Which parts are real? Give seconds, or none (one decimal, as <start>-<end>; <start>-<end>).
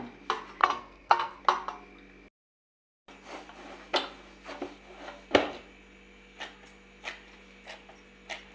0.0-0.6; 1.4-8.5